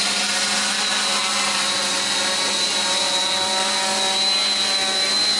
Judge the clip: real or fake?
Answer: real